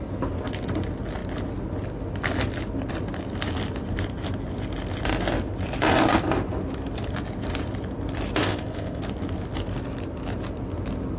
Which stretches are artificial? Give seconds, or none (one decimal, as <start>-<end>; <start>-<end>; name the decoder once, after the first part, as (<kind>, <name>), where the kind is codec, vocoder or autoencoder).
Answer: 8.4-9.0 (codec, ZipCodec)